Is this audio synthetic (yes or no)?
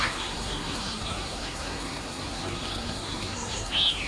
yes